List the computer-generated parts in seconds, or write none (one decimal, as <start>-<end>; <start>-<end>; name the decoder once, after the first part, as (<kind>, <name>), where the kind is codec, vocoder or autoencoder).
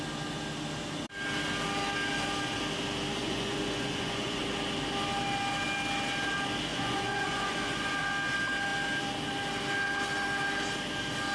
3.2-4.4 (vocoder, Vocos); 6.7-7.9